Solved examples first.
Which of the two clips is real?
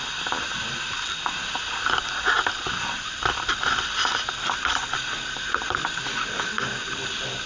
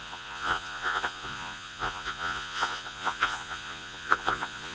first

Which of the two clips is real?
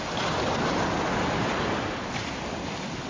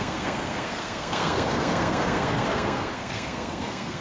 first